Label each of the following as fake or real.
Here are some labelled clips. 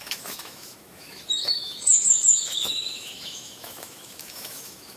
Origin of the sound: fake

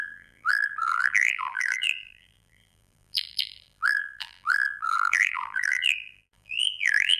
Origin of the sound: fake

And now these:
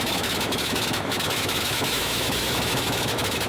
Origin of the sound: fake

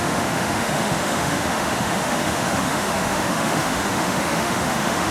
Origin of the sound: fake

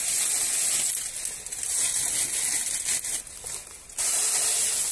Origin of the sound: real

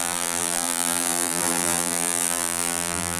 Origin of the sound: fake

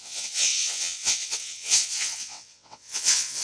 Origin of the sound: fake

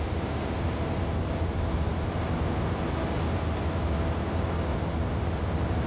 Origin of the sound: real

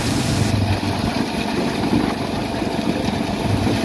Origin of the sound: real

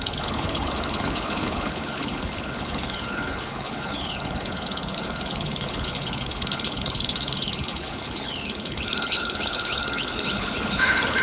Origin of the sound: fake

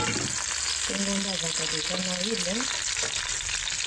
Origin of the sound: real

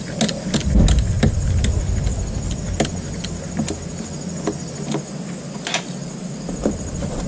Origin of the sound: real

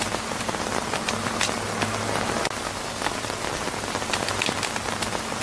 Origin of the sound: real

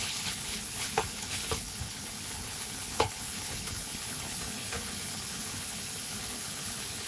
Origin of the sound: fake